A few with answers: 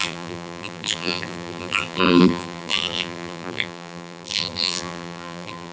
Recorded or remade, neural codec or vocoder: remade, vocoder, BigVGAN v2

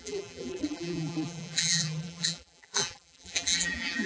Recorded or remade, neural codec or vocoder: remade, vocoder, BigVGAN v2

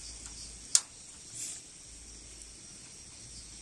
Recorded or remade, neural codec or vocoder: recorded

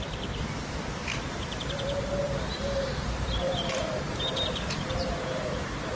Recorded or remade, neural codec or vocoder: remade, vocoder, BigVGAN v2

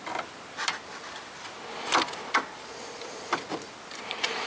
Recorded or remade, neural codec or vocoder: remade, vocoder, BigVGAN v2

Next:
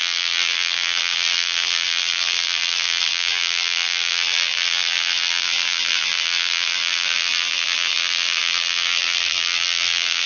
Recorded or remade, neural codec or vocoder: remade, vocoder, BigVGAN v2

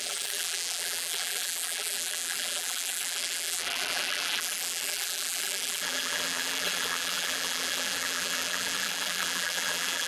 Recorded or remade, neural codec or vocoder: remade, vocoder, BigVGAN v2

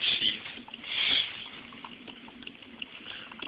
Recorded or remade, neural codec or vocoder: recorded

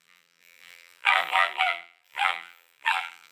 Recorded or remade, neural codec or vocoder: remade, vocoder, BigVGAN v2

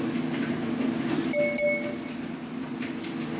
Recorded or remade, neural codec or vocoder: recorded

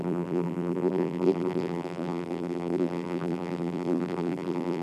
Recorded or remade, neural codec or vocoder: remade, vocoder, BigVGAN v2